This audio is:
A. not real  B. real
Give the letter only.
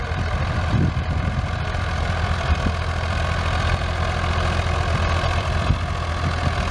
B